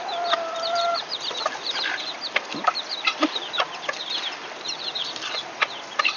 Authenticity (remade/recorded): remade